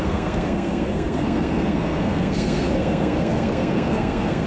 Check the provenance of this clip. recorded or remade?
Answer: remade